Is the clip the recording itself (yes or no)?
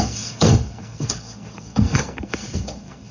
no